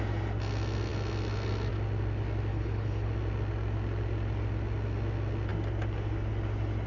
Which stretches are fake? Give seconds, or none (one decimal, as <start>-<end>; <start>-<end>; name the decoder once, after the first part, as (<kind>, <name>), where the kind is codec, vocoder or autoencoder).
2.5-3.1 (codec, HILCodec)